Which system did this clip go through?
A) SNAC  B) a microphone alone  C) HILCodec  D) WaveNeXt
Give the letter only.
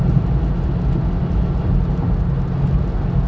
B